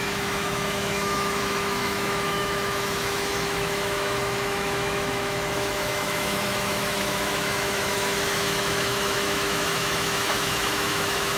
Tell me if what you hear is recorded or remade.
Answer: remade